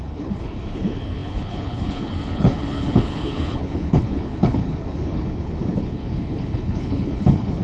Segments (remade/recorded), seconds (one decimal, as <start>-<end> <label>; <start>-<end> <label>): 0.0-7.6 remade